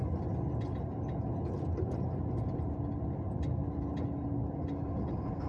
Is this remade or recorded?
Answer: recorded